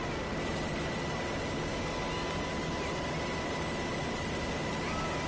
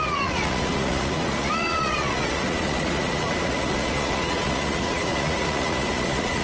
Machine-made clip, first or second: second